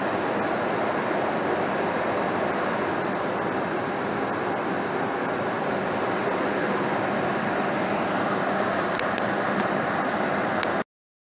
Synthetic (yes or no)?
no